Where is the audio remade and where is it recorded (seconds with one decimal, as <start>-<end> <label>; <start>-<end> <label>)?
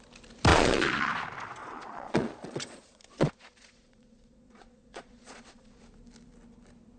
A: 0.0-0.5 recorded; 0.5-1.1 remade; 1.1-1.6 recorded; 1.6-5.8 remade; 5.8-7.0 recorded